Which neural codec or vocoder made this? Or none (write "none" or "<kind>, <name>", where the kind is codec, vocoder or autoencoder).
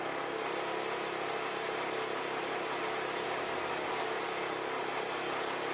none